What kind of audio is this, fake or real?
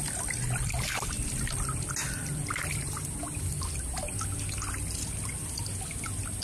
real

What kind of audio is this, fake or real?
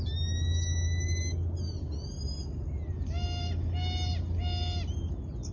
real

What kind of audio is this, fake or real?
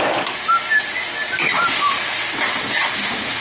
real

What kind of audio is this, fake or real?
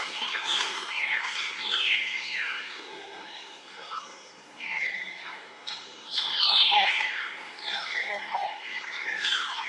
fake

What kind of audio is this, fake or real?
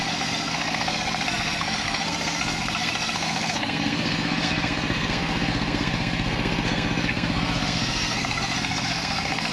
fake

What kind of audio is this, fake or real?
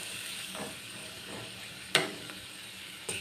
fake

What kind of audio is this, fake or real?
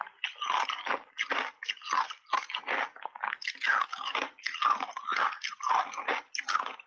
real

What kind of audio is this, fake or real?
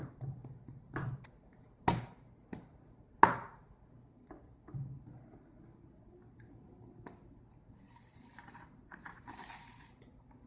real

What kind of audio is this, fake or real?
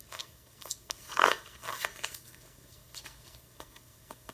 fake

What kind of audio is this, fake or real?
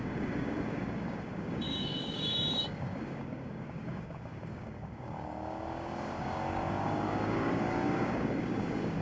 fake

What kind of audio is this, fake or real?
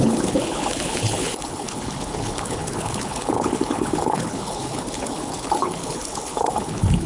fake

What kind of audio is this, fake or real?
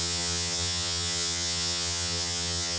fake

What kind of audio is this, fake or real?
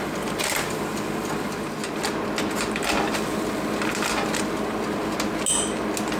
real